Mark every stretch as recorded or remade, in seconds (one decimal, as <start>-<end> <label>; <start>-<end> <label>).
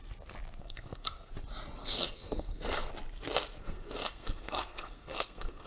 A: 0.0-0.6 recorded; 0.6-1.3 remade; 1.3-1.8 recorded; 1.8-2.9 remade; 2.9-3.6 recorded; 3.6-5.7 remade